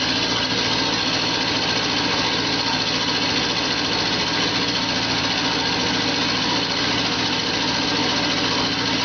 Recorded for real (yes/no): yes